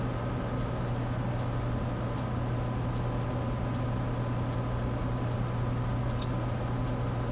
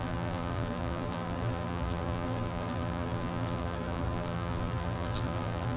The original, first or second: first